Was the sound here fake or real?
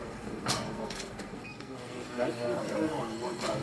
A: fake